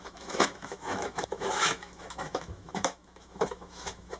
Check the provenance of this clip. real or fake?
fake